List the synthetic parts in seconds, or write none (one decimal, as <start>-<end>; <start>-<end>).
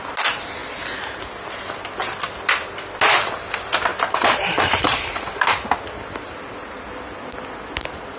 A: 3.9-5.7